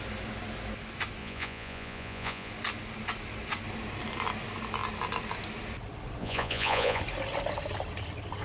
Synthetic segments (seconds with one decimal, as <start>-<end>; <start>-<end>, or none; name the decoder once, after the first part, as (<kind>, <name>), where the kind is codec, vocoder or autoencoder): 1.2-2.5 (vocoder, Vocos); 6.2-7.0